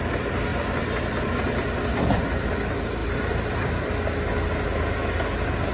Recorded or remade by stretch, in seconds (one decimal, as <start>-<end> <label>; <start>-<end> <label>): 0.0-3.0 recorded; 3.0-3.7 remade; 3.7-5.7 recorded